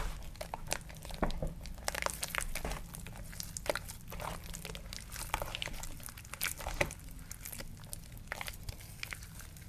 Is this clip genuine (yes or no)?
yes